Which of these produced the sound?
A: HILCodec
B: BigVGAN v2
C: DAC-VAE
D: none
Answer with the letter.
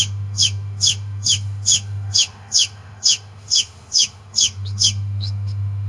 C